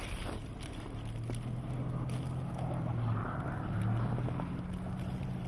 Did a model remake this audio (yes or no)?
no